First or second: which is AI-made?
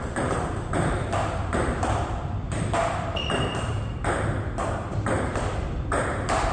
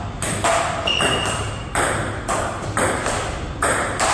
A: first